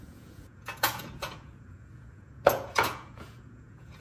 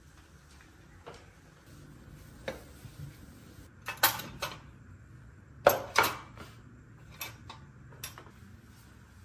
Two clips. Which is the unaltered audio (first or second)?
second